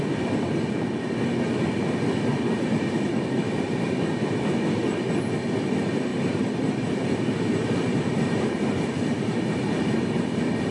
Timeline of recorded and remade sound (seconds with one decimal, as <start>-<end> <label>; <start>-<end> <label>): 0.0-2.3 recorded; 2.3-4.2 remade; 4.2-6.1 recorded; 6.1-10.7 remade